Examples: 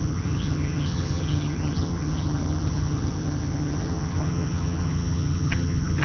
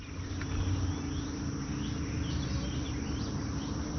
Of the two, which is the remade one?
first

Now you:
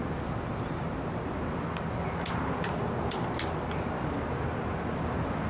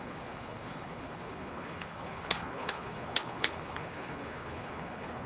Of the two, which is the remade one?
second